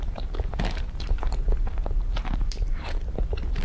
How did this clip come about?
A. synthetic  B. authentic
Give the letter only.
A